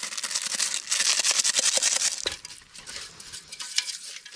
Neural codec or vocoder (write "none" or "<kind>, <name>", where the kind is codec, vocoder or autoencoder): none